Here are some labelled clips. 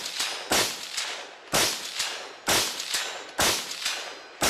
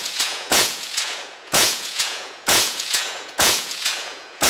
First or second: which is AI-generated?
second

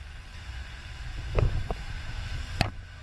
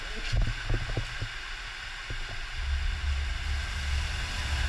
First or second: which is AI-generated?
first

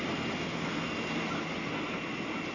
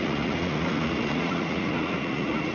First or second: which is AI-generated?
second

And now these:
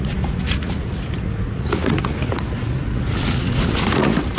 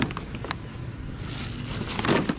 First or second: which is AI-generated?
first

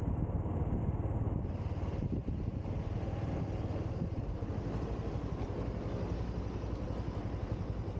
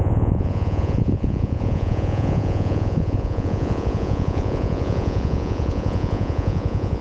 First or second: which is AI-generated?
second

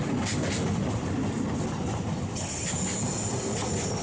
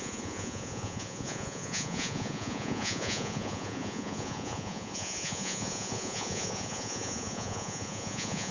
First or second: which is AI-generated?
second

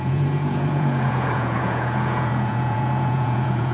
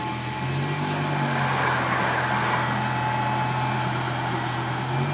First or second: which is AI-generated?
first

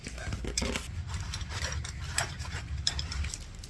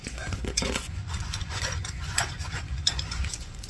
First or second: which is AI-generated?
second